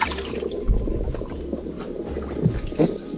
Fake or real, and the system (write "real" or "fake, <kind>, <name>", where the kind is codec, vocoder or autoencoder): real